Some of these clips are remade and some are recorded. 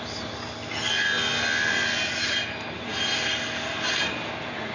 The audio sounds recorded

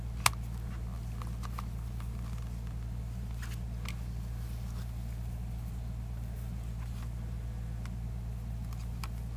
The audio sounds recorded